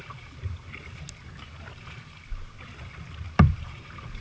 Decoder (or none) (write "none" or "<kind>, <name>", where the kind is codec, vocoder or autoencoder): none